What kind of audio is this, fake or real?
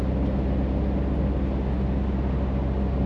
real